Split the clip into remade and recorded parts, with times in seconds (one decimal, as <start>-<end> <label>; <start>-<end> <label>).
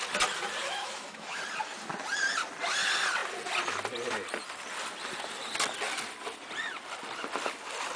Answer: 0.0-0.6 recorded; 0.6-1.4 remade; 1.4-8.0 recorded